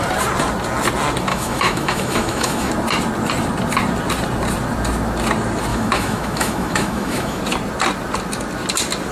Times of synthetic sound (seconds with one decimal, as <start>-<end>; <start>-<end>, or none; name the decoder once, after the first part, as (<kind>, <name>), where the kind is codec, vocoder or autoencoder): 1.3-2.7 (autoencoder, DAC-VAE); 5.7-7.4

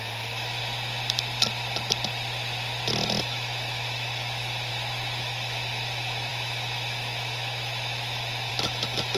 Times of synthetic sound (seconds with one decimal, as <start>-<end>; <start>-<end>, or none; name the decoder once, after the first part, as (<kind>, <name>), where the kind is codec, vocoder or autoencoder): 0.0-0.6 (autoencoder, DAC-VAE); 3.2-4.7; 5.2-9.2